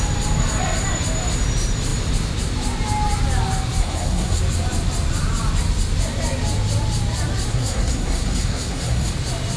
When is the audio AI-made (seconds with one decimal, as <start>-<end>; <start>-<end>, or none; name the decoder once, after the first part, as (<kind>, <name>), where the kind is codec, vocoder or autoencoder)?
3.8-4.4 (codec, SNAC); 7.5-9.1

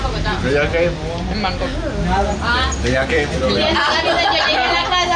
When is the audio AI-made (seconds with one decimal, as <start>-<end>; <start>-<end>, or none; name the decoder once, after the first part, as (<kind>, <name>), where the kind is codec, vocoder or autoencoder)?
none

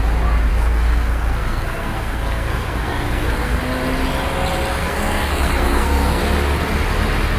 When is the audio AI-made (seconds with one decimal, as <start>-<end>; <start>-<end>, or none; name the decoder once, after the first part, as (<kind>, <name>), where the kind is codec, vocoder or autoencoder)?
0.5-3.6 (codec, SNAC); 4.8-6.2

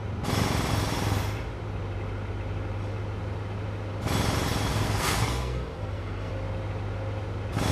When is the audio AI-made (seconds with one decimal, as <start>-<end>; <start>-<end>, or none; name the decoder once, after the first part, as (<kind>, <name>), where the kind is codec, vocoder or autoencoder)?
4.7-6.3 (codec, SNAC)

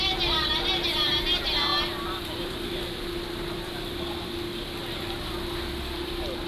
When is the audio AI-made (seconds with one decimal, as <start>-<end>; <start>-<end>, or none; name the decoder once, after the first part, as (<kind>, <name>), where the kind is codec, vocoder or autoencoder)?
none

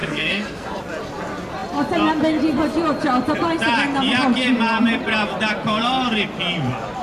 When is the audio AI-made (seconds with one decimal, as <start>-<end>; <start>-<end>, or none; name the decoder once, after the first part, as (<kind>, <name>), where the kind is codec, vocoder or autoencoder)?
0.0-0.8 (codec, SNAC)

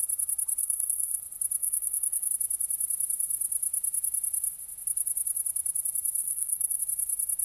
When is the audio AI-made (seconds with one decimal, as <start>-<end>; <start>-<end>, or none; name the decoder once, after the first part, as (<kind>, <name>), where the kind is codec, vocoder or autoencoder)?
0.6-1.2 (codec, SNAC); 1.6-2.3; 6.2-6.8